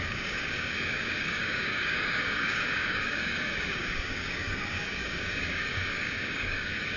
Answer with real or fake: fake